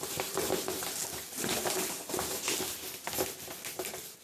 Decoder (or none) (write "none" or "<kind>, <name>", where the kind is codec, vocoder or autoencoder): none